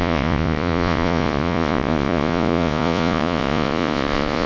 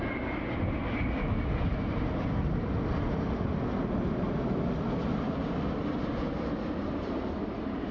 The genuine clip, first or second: second